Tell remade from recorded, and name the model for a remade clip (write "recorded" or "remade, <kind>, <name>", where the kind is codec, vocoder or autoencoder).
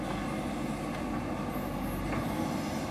recorded